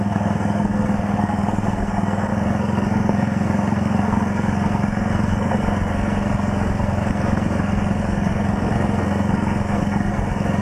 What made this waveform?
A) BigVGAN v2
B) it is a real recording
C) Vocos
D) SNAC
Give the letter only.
D